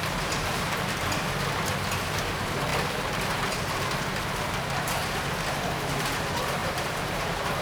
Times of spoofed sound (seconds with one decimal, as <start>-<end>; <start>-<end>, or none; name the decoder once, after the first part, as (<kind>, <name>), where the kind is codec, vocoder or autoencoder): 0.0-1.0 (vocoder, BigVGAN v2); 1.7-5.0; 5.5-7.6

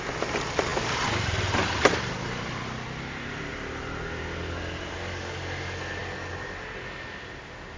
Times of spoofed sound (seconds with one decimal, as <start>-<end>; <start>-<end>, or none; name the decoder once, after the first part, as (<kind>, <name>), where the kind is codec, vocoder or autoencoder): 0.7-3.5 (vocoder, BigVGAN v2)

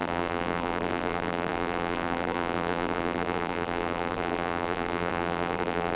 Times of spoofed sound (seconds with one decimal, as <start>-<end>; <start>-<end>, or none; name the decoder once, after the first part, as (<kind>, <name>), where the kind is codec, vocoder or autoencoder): 0.0-6.0 (vocoder, BigVGAN v2)

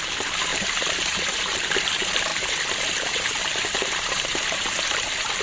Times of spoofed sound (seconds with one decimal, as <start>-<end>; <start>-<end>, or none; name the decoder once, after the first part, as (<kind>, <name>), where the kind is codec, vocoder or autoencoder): 0.5-1.2 (vocoder, BigVGAN v2); 2.3-5.4